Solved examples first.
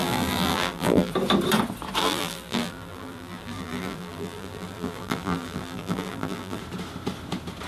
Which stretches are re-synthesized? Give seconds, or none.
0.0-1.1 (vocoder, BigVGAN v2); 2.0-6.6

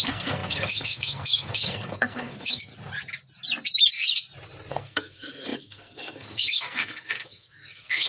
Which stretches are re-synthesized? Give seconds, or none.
0.0-2.7 (codec, SNAC); 4.7-8.1